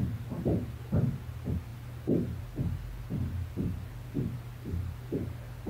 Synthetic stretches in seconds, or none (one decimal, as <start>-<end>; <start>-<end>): none